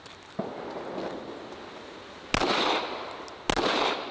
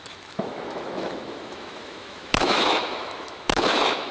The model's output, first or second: second